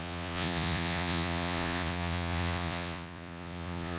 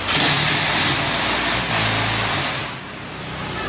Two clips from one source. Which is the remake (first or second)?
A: first